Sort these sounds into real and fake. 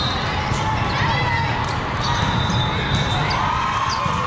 real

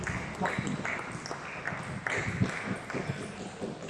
real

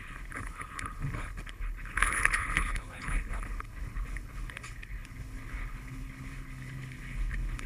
fake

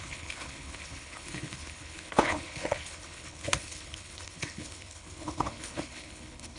fake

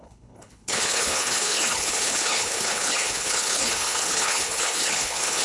fake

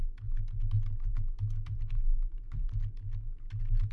real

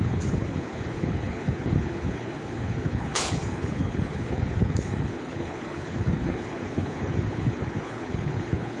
fake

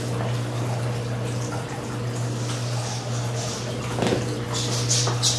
real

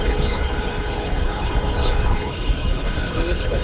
fake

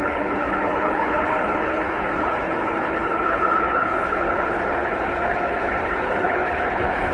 fake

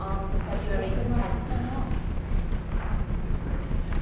real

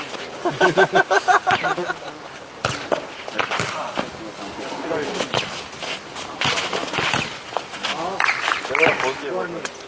real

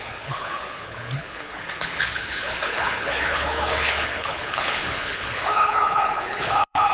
fake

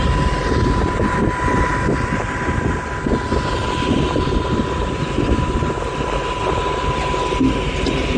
real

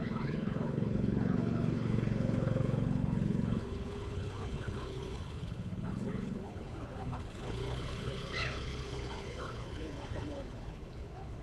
fake